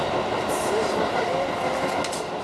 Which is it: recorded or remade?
recorded